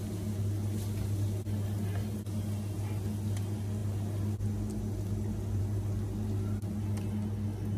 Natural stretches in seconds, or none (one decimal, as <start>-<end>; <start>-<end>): 0.0-7.8